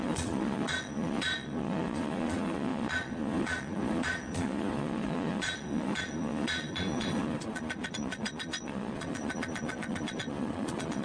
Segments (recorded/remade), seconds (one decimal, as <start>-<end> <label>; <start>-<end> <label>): 0.0-11.0 remade